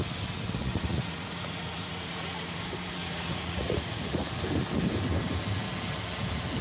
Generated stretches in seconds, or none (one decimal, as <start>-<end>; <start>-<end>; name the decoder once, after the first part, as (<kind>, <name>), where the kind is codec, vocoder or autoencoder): 0.6-2.6 (vocoder, Vocos); 3.0-4.4

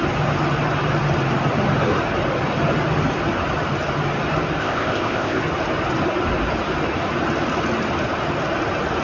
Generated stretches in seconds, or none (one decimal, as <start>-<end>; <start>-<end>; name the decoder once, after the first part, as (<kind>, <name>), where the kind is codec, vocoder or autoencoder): 4.6-5.4 (codec, ZipCodec)

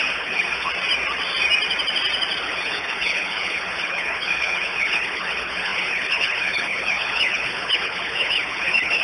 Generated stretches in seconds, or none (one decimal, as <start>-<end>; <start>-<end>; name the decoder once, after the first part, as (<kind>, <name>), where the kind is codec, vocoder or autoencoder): 0.0-0.7 (codec, HILCodec); 2.4-9.0

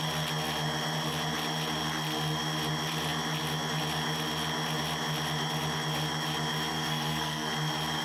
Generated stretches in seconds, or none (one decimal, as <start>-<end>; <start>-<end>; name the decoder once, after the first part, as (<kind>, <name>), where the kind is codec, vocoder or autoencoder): 6.7-7.5 (codec, SNAC)

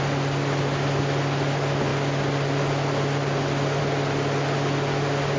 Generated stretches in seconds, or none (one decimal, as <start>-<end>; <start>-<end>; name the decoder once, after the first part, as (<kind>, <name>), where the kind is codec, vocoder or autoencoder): none

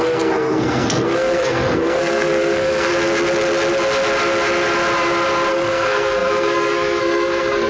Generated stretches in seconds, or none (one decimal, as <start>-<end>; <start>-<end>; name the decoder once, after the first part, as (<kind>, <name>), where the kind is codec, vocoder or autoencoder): 0.0-2.9 (codec, SNAC); 5.5-7.7